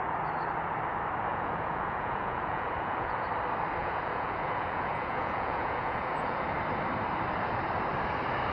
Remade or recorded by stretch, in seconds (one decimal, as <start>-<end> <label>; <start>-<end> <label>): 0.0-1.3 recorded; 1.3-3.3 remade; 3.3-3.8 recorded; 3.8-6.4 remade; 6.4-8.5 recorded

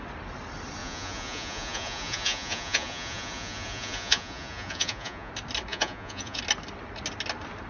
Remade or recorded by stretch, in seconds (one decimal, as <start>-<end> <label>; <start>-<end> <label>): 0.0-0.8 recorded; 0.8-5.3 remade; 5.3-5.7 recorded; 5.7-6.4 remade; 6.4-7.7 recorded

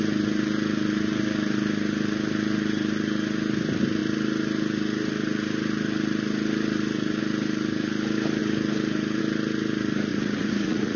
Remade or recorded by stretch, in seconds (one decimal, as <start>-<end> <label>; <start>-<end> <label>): 0.0-10.1 recorded; 10.1-11.0 remade

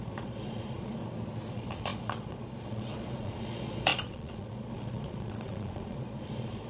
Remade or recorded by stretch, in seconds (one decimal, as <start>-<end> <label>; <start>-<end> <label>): 0.0-1.0 remade; 1.0-1.5 recorded; 1.5-6.7 remade

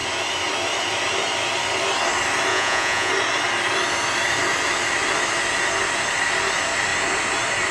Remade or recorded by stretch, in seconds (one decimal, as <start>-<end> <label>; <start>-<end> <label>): 0.0-2.5 recorded; 2.5-3.1 remade; 3.1-7.7 recorded